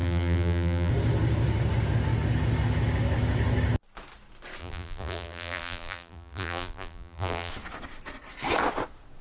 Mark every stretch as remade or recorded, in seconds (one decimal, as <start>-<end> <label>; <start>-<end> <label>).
0.0-0.9 remade; 0.9-4.6 recorded; 4.6-7.5 remade; 7.5-9.2 recorded